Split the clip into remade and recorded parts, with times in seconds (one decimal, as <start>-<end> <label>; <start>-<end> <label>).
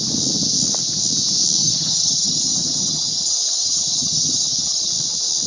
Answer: 0.0-1.6 recorded; 1.6-4.9 remade; 4.9-5.5 recorded